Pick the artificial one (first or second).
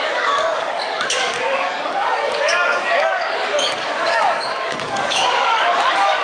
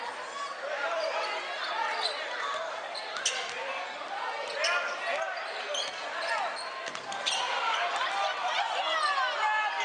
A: first